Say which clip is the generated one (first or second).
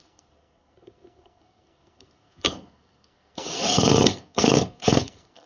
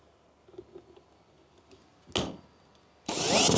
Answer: first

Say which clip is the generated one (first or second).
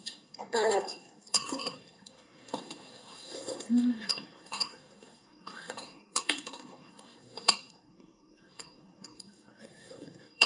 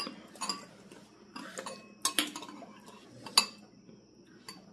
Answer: first